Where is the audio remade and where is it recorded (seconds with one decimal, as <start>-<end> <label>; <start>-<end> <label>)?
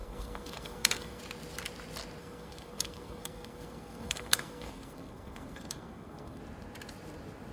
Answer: 0.0-1.2 remade; 1.2-2.2 recorded; 2.2-6.4 remade; 6.4-7.5 recorded